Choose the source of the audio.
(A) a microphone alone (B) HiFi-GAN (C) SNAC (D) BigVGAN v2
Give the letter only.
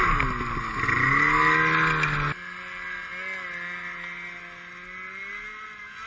A